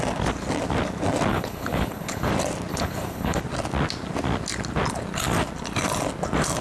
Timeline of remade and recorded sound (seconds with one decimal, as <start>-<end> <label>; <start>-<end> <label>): 0.0-1.3 recorded; 1.3-2.3 remade; 2.3-2.7 recorded; 2.7-3.4 remade; 3.4-6.6 recorded